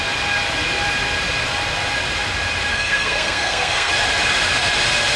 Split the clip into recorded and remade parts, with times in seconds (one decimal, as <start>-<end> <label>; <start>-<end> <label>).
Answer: 0.0-2.7 recorded; 2.7-3.9 remade; 3.9-5.2 recorded